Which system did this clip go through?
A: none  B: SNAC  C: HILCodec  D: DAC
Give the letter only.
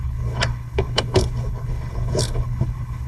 C